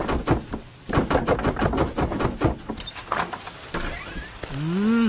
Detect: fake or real real